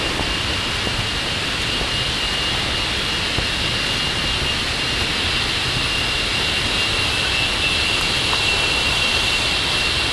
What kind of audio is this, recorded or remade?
recorded